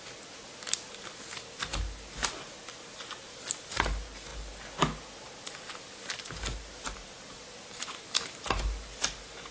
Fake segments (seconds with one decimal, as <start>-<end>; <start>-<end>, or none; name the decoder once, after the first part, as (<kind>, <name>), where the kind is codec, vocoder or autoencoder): none